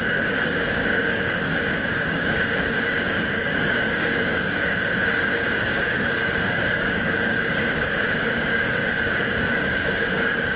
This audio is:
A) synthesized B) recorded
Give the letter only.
A